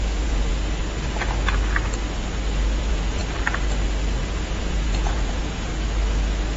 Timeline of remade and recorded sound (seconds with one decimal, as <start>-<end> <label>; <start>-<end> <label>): 0.0-0.5 remade; 0.5-2.8 recorded; 2.8-3.2 remade; 3.2-4.2 recorded; 4.2-5.7 remade; 5.7-6.6 recorded